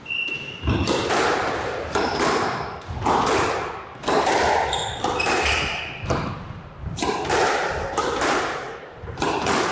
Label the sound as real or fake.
fake